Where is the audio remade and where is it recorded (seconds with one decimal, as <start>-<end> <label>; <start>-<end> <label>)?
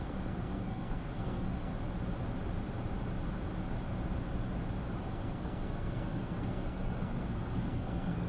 0.0-1.7 remade; 1.7-5.1 recorded; 5.1-8.3 remade